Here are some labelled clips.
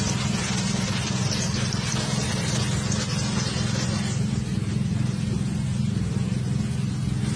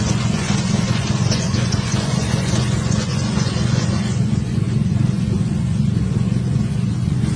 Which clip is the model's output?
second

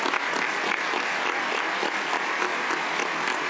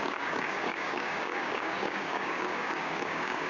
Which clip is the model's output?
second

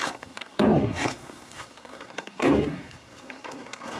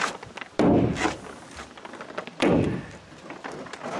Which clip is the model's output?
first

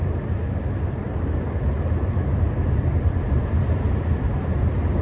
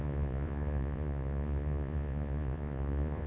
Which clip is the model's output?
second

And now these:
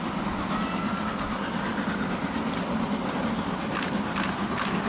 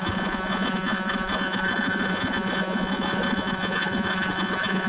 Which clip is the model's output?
second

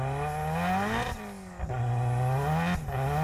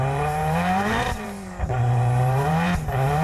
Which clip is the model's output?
second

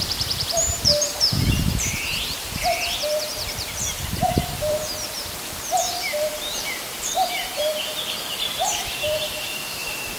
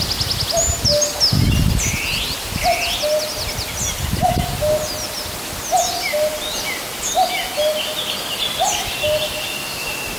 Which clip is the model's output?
first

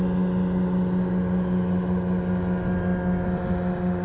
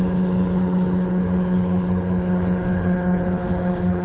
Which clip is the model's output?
second